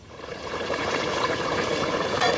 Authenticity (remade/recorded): remade